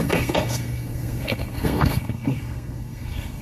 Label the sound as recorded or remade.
remade